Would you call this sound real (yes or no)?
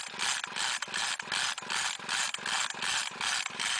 yes